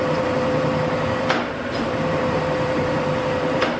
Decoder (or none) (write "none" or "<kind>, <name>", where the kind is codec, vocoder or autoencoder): vocoder, BigVGAN v2